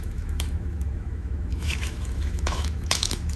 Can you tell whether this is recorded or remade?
remade